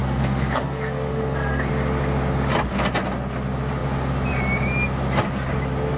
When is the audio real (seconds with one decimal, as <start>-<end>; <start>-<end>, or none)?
1.7-6.0